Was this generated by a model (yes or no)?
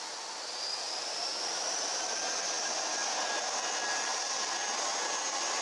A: no